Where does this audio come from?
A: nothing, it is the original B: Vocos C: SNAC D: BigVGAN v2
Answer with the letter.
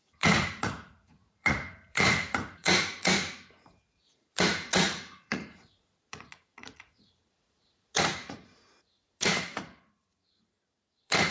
B